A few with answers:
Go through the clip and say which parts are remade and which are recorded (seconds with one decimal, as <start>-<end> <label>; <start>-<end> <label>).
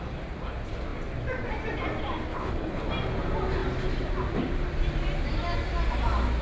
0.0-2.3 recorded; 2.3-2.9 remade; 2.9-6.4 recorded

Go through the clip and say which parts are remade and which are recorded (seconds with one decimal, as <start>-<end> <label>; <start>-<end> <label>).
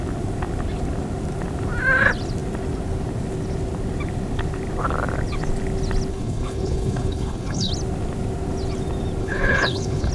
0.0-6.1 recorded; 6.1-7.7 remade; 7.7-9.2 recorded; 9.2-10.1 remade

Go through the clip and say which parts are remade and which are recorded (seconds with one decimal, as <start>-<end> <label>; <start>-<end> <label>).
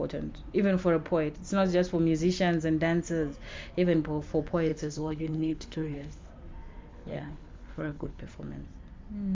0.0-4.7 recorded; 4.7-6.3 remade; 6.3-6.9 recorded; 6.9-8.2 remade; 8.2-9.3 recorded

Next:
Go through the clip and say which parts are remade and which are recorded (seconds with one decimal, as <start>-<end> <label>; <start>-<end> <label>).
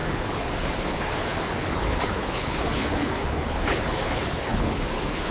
0.0-5.3 remade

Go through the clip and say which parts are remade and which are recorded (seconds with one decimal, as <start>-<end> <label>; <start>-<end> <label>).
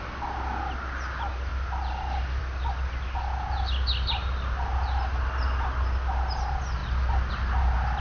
0.0-8.0 recorded